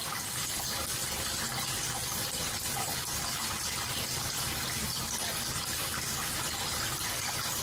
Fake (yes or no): no